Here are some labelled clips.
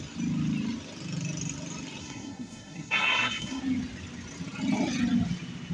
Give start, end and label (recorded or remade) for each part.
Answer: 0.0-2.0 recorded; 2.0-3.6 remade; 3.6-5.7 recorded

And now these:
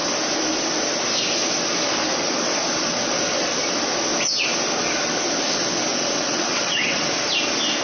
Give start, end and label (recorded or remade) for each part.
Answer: 0.0-5.9 recorded; 5.9-7.1 remade; 7.1-7.8 recorded

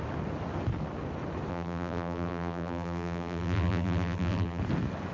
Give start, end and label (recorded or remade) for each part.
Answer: 0.0-1.5 recorded; 1.5-4.6 remade; 4.6-5.1 recorded

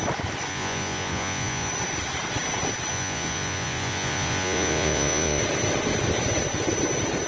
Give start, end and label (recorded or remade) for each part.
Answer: 0.0-0.5 recorded; 0.5-1.7 remade; 1.7-2.9 recorded; 2.9-5.4 remade; 5.4-7.3 recorded

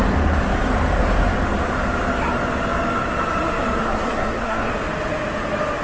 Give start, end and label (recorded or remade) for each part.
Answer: 0.0-3.8 recorded; 3.8-4.7 remade; 4.7-5.8 recorded

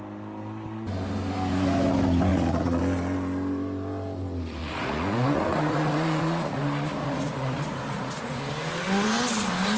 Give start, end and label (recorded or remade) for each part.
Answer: 0.0-2.3 recorded; 2.3-2.8 remade; 2.8-4.6 recorded; 4.6-6.6 remade; 6.6-7.0 recorded; 7.0-8.4 remade; 8.4-9.8 recorded

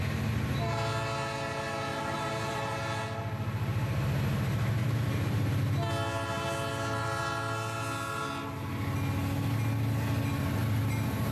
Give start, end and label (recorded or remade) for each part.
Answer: 0.0-1.9 recorded; 1.9-2.8 remade; 2.8-4.8 recorded; 4.8-5.5 remade; 5.5-10.6 recorded; 10.6-11.3 remade

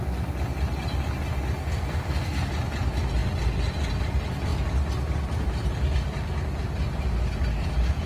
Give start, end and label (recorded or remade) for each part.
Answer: 0.0-1.6 recorded; 1.6-2.5 remade; 2.5-8.1 recorded